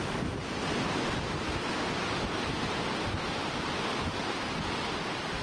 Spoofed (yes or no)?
no